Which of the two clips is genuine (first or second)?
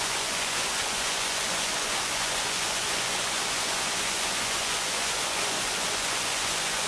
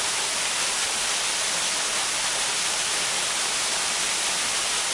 second